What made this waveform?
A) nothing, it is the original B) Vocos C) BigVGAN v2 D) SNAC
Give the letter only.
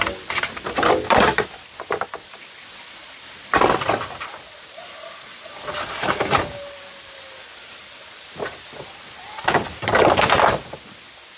C